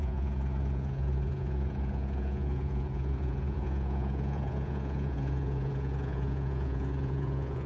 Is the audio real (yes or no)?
no